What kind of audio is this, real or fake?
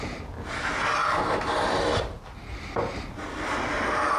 real